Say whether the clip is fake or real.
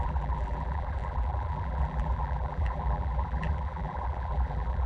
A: fake